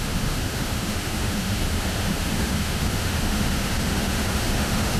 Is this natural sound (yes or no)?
no